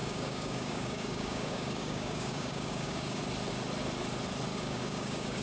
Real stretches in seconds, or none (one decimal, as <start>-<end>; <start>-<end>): 3.2-4.5